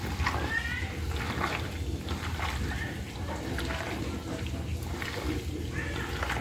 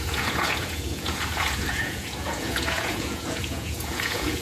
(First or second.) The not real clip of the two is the second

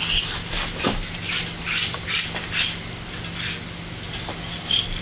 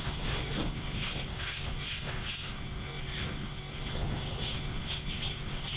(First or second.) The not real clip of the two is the second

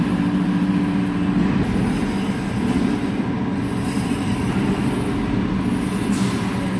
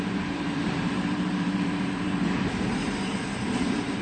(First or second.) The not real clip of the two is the second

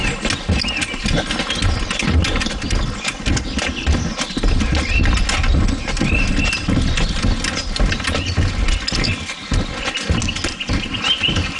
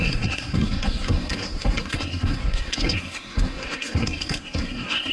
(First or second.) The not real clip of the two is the second